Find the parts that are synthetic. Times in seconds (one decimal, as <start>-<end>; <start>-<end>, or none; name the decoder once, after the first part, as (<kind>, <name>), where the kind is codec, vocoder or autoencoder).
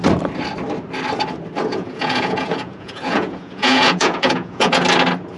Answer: 1.7-4.7 (vocoder, Vocos)